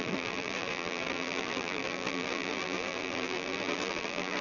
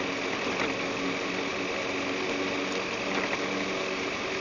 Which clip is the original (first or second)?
second